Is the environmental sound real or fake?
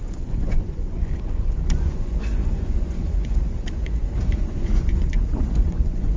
fake